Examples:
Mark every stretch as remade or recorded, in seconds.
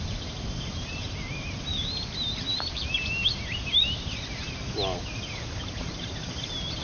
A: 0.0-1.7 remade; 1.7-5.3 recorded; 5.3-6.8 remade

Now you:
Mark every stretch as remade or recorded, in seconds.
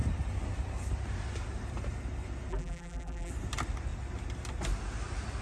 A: 0.0-2.5 recorded; 2.5-3.3 remade; 3.3-5.4 recorded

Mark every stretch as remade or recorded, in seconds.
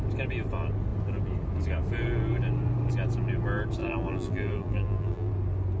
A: 0.0-3.8 recorded; 3.8-5.3 remade; 5.3-5.8 recorded